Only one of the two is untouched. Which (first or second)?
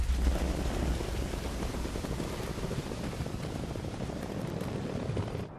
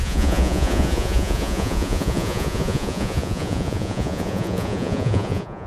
first